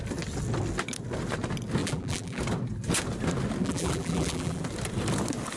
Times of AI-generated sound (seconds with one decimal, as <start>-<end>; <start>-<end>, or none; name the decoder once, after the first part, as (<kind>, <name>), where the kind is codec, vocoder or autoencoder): 1.8-2.4 (vocoder, BigVGAN v2); 3.6-4.6